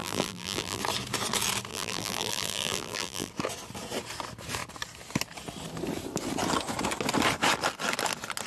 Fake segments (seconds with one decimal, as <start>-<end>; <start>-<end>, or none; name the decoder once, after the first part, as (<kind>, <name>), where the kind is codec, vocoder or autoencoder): 0.0-0.8 (vocoder, BigVGAN v2); 1.7-3.3